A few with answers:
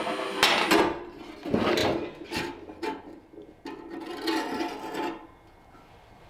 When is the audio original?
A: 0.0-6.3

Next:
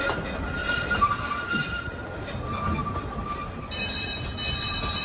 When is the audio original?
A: 0.0-0.6; 1.2-2.8; 3.9-5.0

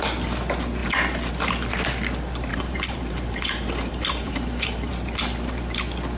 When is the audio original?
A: 0.0-2.5; 4.9-6.2

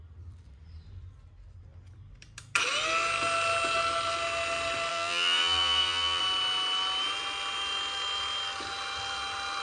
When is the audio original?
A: 0.0-4.9; 6.2-9.6